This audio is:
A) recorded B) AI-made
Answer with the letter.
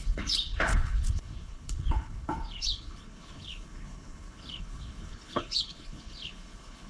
B